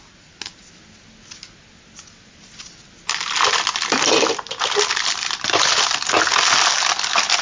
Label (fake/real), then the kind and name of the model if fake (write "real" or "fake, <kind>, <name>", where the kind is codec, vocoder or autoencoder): real